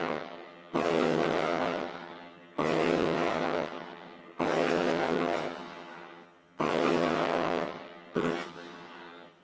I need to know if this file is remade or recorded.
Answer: remade